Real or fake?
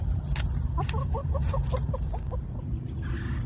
real